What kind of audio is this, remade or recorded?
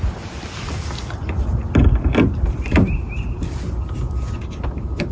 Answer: recorded